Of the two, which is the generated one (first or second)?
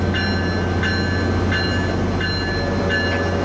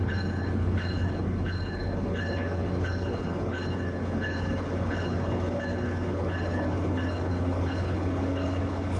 second